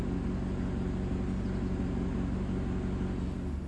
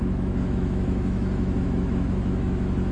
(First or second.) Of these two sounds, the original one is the first